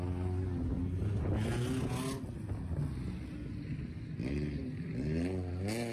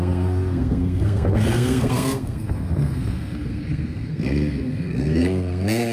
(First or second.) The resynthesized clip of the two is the second